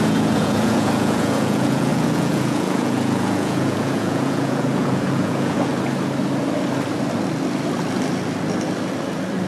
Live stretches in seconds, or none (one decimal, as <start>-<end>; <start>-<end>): 5.7-9.5